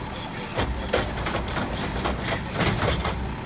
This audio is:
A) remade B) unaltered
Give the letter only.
B